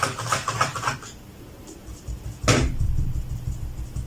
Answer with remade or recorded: recorded